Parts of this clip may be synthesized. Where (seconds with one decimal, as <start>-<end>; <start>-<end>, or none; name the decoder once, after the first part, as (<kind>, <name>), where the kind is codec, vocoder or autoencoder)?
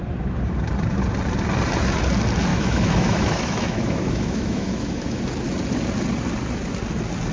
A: 2.5-5.2 (autoencoder, DAC-VAE)